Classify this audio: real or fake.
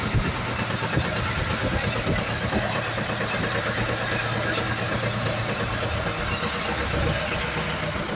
real